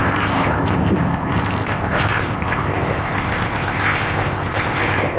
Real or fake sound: fake